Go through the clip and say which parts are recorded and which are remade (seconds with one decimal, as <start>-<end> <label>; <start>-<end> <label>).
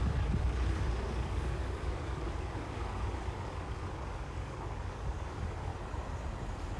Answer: 0.0-5.7 remade; 5.7-6.8 recorded